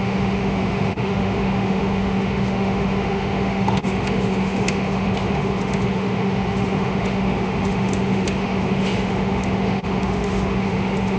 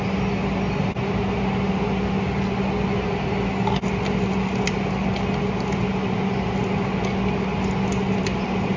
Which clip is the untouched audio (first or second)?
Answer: second